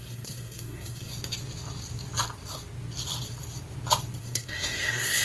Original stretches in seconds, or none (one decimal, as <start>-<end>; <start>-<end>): 1.1-4.2